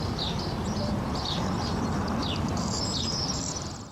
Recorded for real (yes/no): no